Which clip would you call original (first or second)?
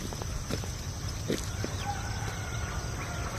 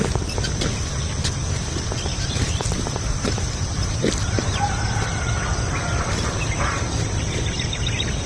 first